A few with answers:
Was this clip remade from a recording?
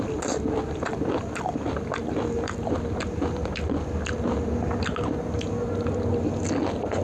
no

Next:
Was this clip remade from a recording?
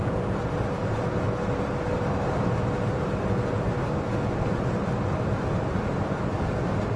no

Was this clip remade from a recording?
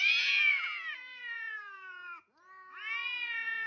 yes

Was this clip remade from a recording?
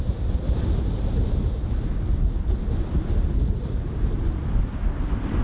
no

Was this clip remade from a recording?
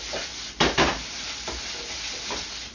no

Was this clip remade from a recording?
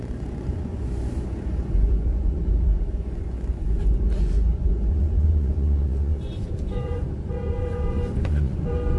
yes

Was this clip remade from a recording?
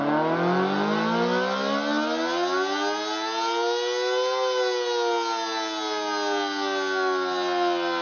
no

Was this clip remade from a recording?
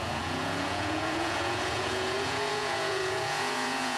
yes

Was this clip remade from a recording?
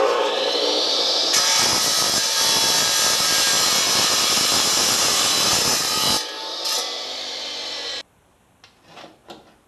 no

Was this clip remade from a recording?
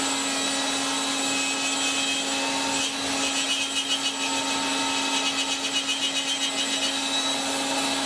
no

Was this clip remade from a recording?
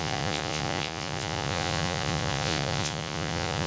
yes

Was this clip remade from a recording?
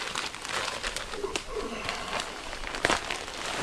no